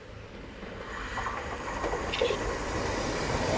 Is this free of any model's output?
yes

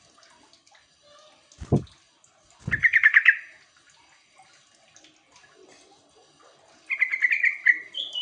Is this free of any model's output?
yes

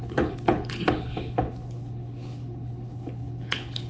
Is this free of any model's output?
no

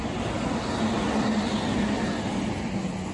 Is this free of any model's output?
yes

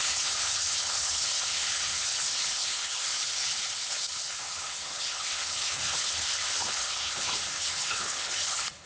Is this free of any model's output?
no